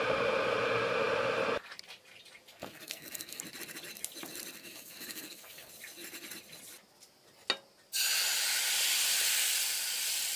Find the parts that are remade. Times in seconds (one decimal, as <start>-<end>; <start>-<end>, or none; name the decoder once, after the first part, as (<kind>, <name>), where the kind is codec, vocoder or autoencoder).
2.5-3.4 (codec, SNAC); 4.6-5.7